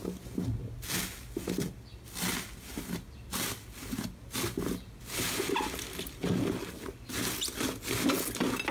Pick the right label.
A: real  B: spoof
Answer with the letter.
A